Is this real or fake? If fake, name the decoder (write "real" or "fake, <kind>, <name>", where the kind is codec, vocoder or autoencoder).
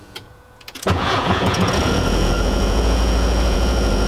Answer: fake, vocoder, Vocos